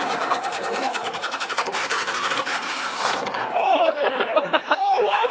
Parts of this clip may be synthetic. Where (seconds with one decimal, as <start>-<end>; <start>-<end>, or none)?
0.0-5.3